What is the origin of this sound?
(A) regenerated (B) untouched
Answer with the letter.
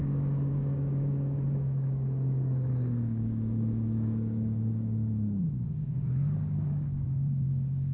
A